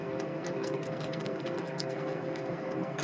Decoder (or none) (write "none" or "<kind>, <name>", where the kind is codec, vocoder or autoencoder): codec, SNAC